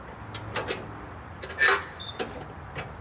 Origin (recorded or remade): recorded